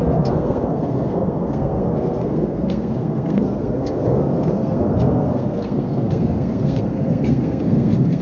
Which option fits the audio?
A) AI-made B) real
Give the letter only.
A